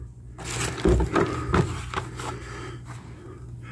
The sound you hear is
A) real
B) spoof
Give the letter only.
A